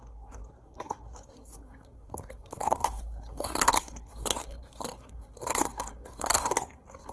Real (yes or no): no